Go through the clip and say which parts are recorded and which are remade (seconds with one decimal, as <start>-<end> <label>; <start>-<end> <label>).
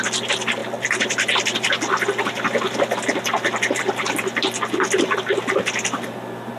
0.0-6.6 recorded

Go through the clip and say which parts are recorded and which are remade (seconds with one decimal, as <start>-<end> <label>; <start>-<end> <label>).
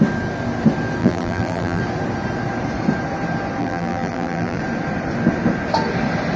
0.0-1.0 recorded; 1.0-1.8 remade; 1.8-3.6 recorded; 3.6-4.6 remade; 4.6-6.4 recorded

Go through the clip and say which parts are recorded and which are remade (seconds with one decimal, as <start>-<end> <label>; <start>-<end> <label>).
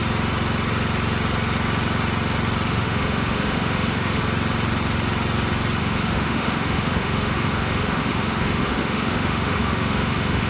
0.0-2.7 recorded; 2.7-4.2 remade; 4.2-5.8 recorded; 5.8-10.5 remade